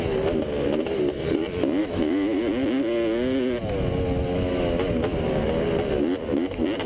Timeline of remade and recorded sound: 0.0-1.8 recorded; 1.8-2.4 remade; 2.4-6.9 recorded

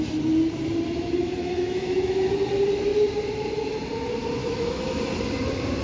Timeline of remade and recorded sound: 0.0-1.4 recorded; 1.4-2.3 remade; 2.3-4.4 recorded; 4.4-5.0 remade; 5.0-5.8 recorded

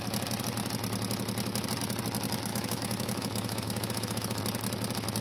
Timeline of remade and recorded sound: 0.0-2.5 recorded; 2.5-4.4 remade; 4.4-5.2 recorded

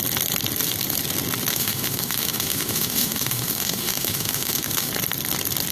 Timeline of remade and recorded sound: 0.0-1.5 recorded; 1.5-4.9 remade; 4.9-5.7 recorded

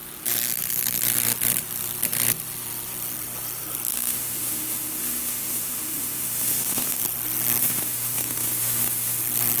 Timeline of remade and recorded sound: 0.0-3.9 recorded; 3.9-7.0 remade; 7.0-7.6 recorded; 7.6-9.2 remade; 9.2-9.6 recorded

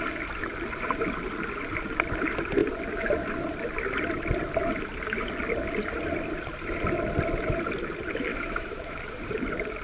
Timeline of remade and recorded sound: 0.0-8.3 recorded; 8.3-9.0 remade; 9.0-9.8 recorded

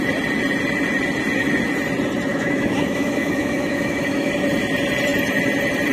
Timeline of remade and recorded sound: 0.0-2.3 recorded; 2.3-4.3 remade; 4.3-5.9 recorded

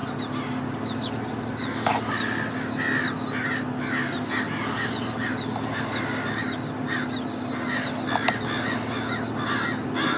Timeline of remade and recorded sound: 0.0-10.2 recorded